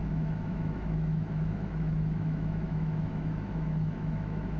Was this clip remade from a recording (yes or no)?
yes